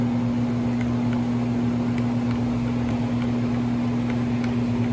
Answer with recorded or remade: recorded